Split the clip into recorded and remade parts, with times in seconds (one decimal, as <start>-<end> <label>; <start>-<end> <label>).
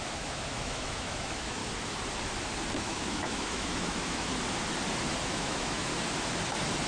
0.0-1.6 remade; 1.6-2.8 recorded; 2.8-4.3 remade; 4.3-5.3 recorded; 5.3-5.9 remade; 5.9-6.9 recorded